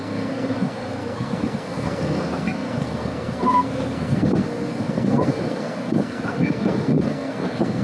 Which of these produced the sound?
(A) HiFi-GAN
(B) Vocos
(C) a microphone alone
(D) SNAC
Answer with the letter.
D